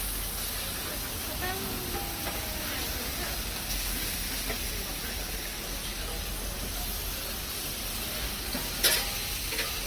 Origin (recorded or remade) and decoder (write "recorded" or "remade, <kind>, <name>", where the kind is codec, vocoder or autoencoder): recorded